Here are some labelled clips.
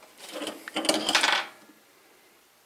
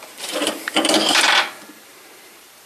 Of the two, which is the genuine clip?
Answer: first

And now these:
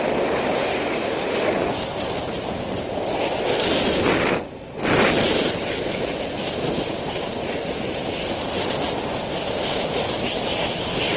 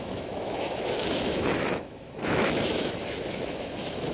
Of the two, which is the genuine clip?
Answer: first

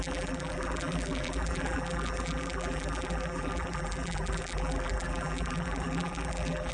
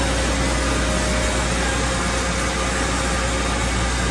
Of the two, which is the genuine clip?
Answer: second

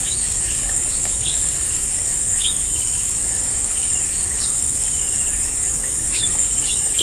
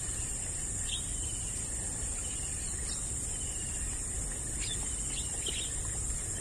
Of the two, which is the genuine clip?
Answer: second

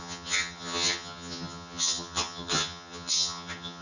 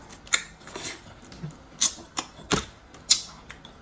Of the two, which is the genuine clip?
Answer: second